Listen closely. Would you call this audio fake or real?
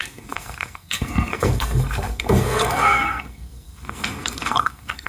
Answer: fake